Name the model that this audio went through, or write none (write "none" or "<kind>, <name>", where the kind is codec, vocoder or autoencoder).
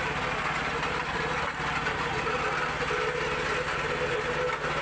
none